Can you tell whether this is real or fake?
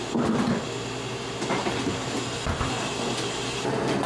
real